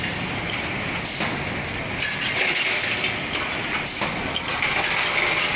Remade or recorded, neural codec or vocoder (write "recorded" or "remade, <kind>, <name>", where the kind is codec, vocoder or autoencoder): recorded